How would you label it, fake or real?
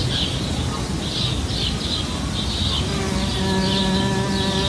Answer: real